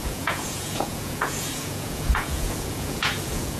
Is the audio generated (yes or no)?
yes